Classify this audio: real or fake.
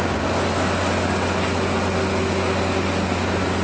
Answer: real